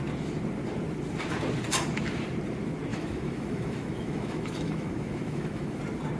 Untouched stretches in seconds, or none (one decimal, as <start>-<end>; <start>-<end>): 0.0-2.9; 5.8-6.2